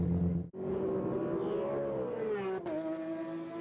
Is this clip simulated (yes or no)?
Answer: no